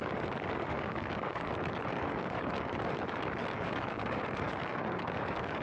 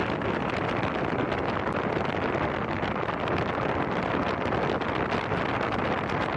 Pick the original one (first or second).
second